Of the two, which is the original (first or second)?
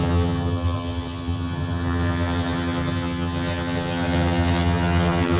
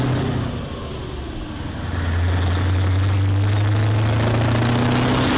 second